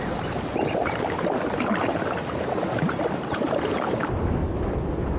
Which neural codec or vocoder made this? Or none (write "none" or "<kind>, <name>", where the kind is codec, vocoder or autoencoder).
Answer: none